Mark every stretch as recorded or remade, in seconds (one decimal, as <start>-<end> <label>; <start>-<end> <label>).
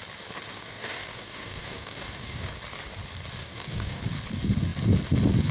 0.0-0.5 recorded; 0.5-2.5 remade; 2.5-3.4 recorded; 3.4-4.0 remade; 4.0-5.5 recorded